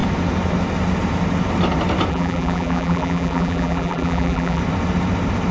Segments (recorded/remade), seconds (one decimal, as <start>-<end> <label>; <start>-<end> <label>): 0.0-2.1 recorded; 2.1-4.6 remade; 4.6-5.5 recorded